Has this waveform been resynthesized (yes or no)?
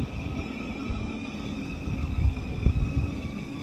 yes